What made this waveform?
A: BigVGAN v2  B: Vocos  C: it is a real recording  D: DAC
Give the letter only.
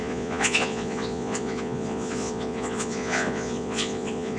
B